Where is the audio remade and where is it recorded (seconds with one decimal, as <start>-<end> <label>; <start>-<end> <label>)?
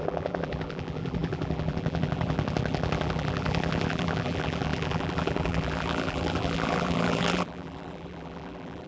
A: 0.0-8.9 remade